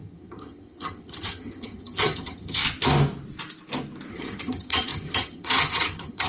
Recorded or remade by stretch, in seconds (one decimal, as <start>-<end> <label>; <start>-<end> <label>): 0.0-2.6 remade; 2.6-4.1 recorded; 4.1-6.3 remade